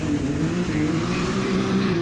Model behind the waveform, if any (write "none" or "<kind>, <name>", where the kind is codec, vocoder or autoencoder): vocoder, BigVGAN v2